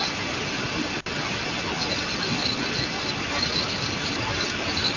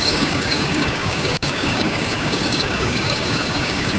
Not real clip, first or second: second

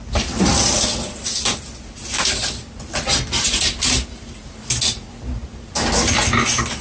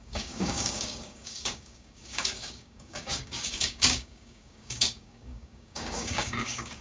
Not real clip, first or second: second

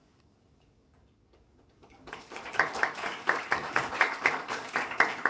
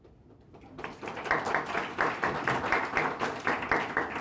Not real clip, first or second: first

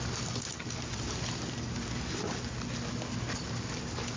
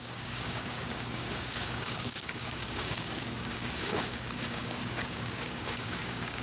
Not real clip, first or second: second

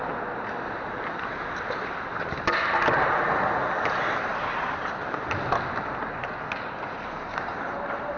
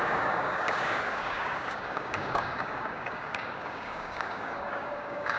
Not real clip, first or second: second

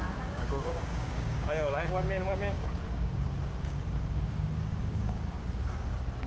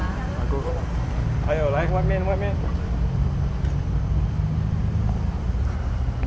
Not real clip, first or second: first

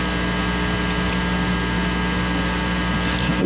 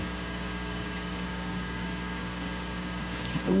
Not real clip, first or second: second